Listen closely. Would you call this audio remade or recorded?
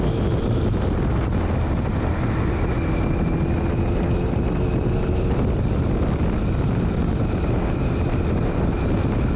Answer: recorded